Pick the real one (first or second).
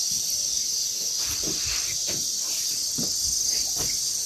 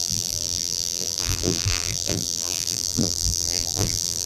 first